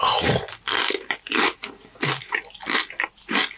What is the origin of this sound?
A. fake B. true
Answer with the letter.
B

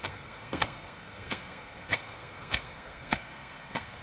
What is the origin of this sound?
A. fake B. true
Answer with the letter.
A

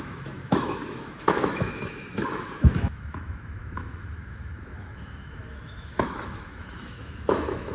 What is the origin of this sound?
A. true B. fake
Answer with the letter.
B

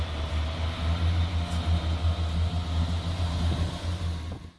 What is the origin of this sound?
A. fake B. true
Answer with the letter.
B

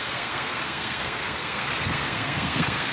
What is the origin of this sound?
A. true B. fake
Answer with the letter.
B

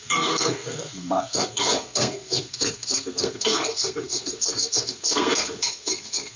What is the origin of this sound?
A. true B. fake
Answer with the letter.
B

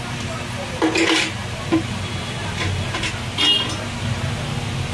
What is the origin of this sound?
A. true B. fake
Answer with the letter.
A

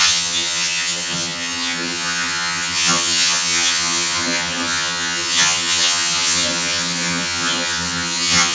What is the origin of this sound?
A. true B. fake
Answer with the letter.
B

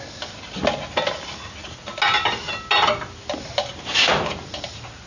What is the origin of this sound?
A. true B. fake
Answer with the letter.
A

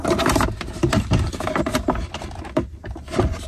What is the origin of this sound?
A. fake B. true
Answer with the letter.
B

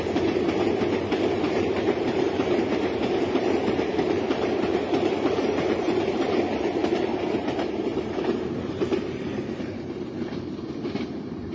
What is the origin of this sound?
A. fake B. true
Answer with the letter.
A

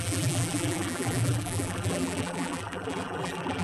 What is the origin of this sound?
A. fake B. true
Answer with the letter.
A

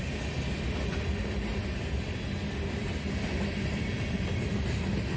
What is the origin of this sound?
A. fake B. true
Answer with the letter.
B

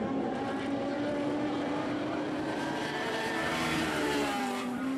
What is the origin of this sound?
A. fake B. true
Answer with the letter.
A